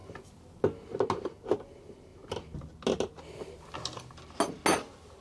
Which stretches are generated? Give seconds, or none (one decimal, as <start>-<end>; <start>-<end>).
none